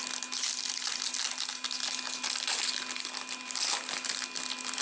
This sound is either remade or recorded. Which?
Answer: recorded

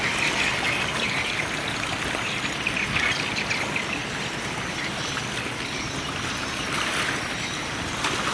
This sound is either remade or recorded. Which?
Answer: recorded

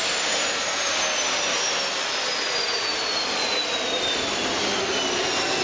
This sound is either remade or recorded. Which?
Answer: recorded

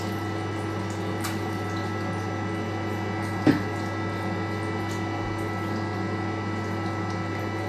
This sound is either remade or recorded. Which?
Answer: recorded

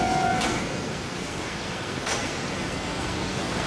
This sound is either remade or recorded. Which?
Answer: remade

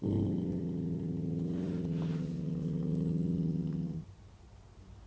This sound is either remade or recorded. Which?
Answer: recorded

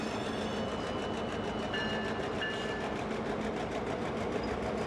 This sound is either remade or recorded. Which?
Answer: recorded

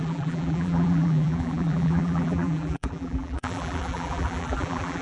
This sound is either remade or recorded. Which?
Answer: remade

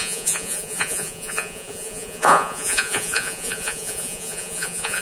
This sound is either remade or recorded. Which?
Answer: remade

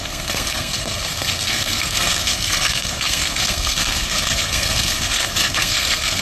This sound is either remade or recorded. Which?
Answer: remade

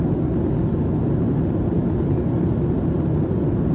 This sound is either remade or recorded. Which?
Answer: recorded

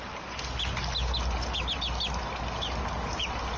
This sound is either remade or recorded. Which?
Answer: recorded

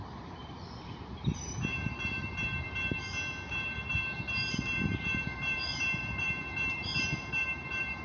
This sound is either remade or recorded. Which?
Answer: remade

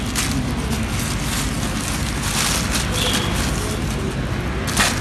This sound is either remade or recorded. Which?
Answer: recorded